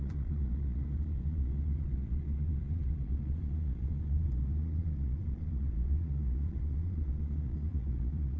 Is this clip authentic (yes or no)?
no